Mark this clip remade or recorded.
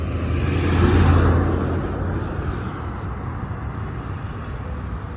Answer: recorded